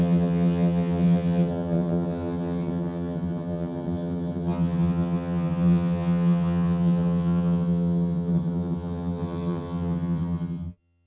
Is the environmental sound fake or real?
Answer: fake